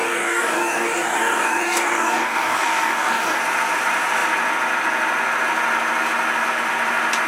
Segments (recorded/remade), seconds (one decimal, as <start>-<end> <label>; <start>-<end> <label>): 0.0-3.4 remade; 3.4-7.3 recorded